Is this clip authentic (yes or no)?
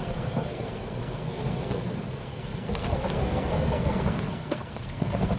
no